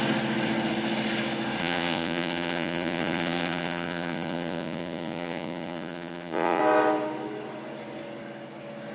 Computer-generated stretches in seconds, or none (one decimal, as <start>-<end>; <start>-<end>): 1.6-6.6